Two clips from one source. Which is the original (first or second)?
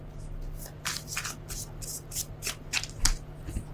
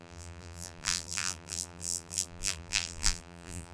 first